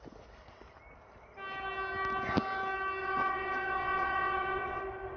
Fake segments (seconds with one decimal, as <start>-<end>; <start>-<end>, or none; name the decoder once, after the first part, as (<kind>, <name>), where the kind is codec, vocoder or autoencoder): 3.0-4.8 (vocoder, WaveNeXt)